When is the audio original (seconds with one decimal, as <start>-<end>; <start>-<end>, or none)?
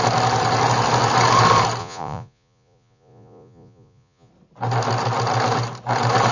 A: 0.0-1.8; 4.3-6.3